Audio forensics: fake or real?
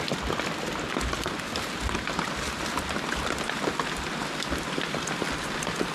real